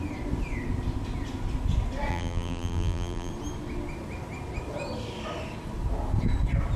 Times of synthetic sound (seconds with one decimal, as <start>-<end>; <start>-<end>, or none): 2.1-3.3